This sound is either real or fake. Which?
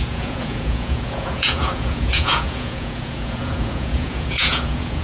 fake